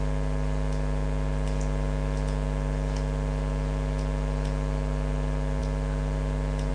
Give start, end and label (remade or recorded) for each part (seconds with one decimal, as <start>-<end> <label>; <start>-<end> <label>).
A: 0.0-6.7 recorded